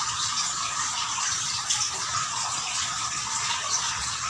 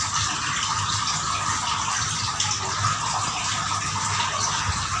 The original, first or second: second